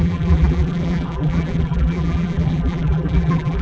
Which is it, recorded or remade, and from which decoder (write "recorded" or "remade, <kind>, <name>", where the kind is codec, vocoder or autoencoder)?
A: remade, vocoder, BigVGAN v2